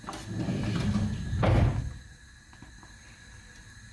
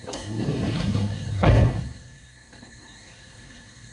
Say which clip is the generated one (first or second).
second